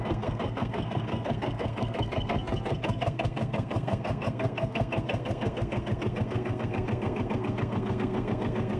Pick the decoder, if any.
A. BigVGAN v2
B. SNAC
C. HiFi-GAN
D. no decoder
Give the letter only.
B